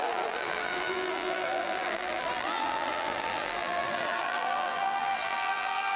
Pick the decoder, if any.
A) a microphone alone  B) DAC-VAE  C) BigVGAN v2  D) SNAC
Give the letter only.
C